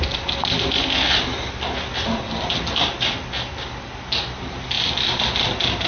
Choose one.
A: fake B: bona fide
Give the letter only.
B